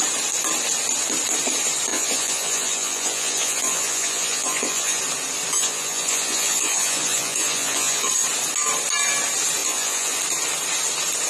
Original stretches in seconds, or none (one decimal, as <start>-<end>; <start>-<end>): 0.0-1.9; 5.0-5.5; 8.1-9.6; 10.2-11.3